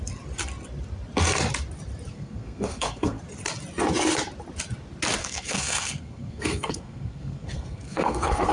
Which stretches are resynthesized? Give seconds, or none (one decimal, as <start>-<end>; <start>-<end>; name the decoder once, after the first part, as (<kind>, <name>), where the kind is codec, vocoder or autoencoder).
2.1-3.2 (codec, SNAC); 5.2-8.5